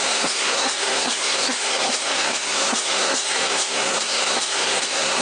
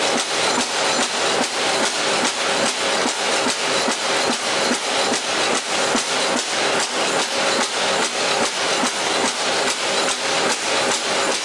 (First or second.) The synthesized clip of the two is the first